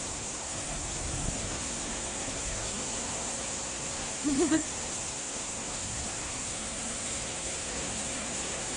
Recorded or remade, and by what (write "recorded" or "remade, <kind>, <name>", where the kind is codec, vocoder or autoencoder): remade, codec, SNAC